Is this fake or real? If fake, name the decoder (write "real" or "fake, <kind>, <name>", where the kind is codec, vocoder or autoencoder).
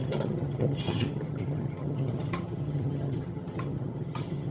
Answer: fake, vocoder, HiFi-GAN